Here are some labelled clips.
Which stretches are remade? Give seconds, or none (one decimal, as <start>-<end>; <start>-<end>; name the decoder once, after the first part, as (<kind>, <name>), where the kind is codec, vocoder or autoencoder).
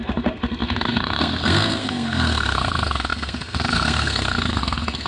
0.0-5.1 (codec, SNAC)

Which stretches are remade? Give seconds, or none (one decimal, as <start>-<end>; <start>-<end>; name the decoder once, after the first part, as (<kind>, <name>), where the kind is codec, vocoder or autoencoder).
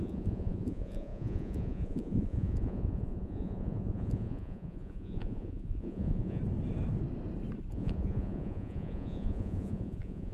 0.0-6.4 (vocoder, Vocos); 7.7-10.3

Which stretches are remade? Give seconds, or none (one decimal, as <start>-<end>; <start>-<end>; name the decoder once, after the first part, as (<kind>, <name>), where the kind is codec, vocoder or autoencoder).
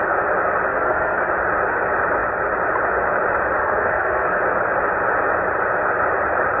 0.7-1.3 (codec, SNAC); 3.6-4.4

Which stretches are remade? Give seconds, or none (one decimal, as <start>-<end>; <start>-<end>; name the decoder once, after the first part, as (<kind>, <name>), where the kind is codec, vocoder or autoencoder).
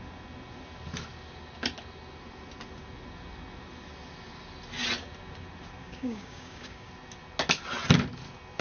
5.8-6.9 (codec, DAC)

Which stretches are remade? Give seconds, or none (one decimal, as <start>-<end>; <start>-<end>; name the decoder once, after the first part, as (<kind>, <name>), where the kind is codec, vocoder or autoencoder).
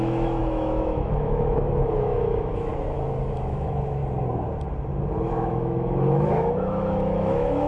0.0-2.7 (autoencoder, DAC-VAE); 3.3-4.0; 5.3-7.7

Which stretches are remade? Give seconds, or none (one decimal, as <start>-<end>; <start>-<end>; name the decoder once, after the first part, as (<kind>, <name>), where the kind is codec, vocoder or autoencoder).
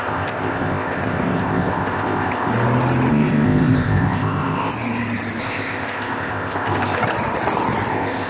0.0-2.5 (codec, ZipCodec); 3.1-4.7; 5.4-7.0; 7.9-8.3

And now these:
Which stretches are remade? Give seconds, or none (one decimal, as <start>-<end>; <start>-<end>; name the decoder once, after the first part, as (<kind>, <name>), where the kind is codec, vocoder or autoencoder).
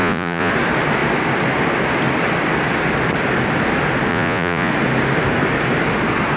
0.0-0.5 (vocoder, Vocos); 4.1-4.7